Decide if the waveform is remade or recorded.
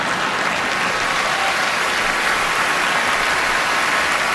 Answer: recorded